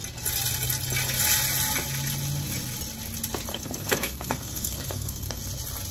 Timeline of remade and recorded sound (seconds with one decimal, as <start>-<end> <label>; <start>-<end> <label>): 0.0-3.5 recorded; 3.5-5.4 remade; 5.4-5.9 recorded